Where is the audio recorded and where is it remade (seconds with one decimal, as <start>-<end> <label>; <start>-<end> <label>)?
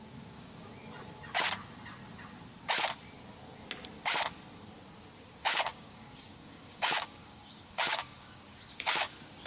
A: 0.0-0.7 remade; 0.7-5.4 recorded; 5.4-9.5 remade